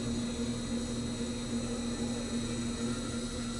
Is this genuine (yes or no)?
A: yes